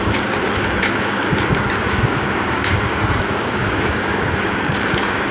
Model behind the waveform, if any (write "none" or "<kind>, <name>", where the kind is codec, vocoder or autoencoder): codec, DAC